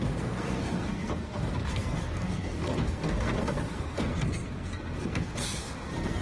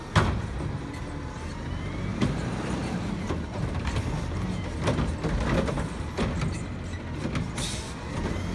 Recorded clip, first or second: second